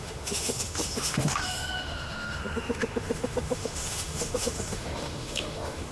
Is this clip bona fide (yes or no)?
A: no